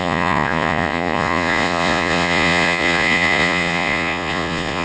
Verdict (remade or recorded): remade